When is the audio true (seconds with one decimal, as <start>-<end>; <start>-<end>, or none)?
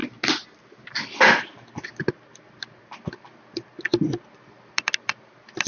0.0-5.7